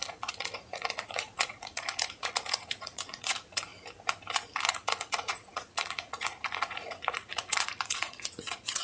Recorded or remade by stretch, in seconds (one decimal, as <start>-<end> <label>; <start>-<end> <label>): 0.0-3.7 remade; 3.7-4.7 recorded; 4.7-8.8 remade